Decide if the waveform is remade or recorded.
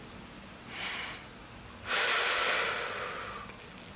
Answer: recorded